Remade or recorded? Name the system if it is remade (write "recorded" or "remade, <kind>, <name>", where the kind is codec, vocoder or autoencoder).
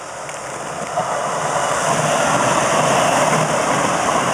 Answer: recorded